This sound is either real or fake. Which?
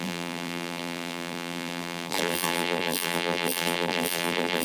fake